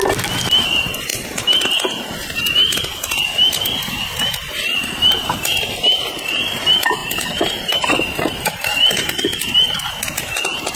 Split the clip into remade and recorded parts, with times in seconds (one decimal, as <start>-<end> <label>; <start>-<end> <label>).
0.0-1.1 recorded; 1.1-1.8 remade; 1.8-7.0 recorded; 7.0-9.5 remade; 9.5-10.8 recorded